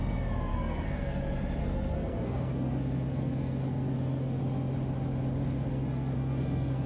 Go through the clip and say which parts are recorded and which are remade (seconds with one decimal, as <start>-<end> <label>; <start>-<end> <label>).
0.0-0.5 recorded; 0.5-1.2 remade; 1.2-1.6 recorded; 1.6-4.4 remade; 4.4-5.7 recorded; 5.7-6.9 remade